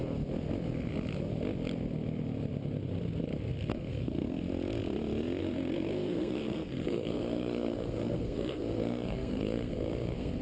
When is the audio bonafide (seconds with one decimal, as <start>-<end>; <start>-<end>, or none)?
0.0-3.7; 4.4-5.4